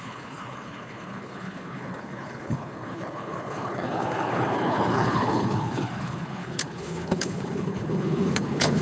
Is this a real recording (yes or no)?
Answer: no